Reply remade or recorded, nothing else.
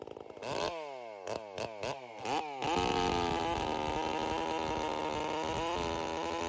recorded